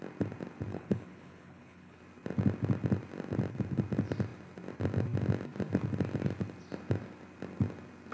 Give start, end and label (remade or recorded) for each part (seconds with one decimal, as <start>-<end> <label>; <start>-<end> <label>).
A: 0.0-0.7 recorded; 0.7-2.0 remade; 2.0-8.1 recorded